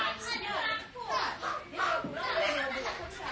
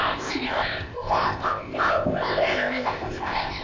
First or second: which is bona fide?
first